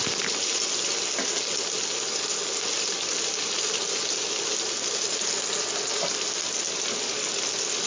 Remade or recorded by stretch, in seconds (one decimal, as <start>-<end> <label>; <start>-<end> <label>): 0.0-7.9 recorded